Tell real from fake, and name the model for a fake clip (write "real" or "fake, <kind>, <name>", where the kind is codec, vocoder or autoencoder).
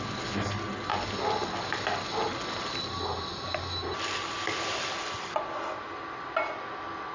real